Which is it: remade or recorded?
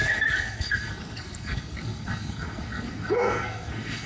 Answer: remade